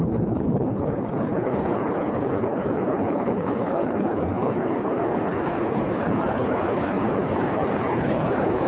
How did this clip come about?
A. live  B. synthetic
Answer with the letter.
B